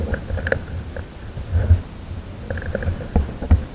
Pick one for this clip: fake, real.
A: real